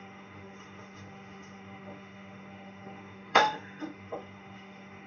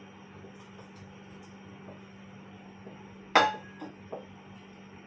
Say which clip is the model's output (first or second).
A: first